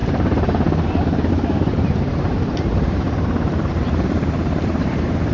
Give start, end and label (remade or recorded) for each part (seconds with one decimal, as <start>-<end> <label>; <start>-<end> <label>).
0.0-1.3 recorded; 1.3-5.3 remade